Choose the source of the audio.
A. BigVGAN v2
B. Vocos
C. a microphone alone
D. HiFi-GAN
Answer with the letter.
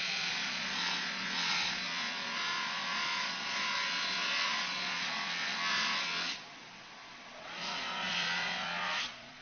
B